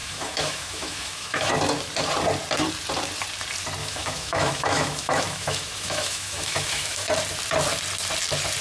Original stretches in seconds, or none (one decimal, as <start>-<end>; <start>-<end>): 1.5-3.8; 7.1-8.6